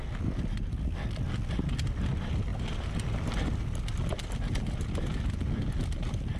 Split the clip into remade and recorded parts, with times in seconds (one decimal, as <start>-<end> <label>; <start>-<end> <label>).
0.0-6.4 recorded